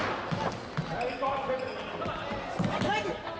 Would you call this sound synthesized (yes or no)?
no